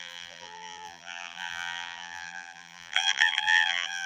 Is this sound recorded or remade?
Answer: remade